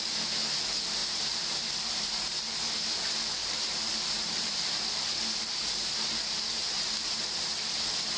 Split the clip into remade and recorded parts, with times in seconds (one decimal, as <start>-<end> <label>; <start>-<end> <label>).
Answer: 0.0-1.0 recorded; 1.0-2.6 remade; 2.6-3.4 recorded; 3.4-5.9 remade; 5.9-6.5 recorded; 6.5-7.3 remade; 7.3-8.2 recorded